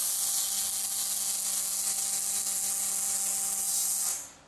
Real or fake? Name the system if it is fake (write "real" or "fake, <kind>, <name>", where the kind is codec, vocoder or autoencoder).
real